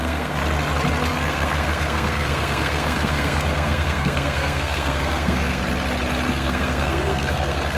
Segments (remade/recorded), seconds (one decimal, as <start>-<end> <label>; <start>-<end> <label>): 0.0-0.4 remade; 0.4-1.1 recorded; 1.1-5.6 remade; 5.6-6.3 recorded; 6.3-7.8 remade